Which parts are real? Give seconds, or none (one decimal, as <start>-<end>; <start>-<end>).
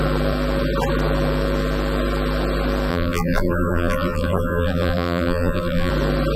0.0-2.9; 5.9-6.4